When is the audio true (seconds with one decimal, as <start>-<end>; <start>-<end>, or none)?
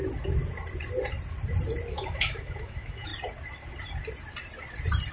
0.0-1.9; 3.1-5.1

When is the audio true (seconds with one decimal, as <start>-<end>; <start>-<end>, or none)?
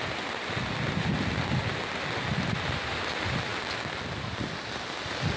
0.0-5.4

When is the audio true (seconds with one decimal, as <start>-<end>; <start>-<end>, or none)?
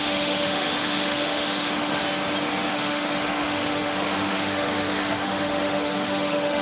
2.0-2.7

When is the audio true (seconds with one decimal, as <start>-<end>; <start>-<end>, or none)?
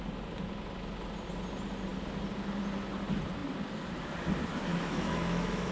0.0-4.7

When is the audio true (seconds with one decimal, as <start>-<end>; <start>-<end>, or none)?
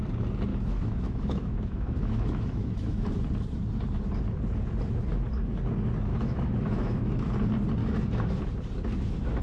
0.0-0.5; 3.1-6.1; 7.3-7.8; 8.4-9.4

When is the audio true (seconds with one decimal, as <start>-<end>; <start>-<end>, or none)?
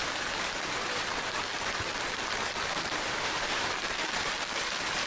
0.0-3.2; 3.7-5.1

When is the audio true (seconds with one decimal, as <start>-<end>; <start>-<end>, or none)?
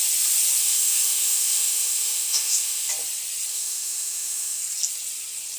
0.0-0.6; 2.9-3.5; 4.6-5.6